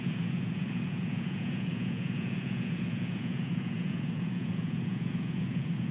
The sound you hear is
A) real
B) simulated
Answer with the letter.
B